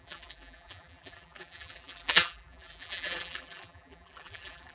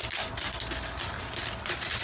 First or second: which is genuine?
second